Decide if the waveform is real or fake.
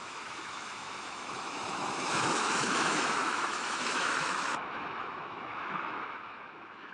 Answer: fake